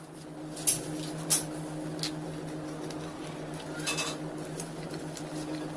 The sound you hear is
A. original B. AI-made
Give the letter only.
A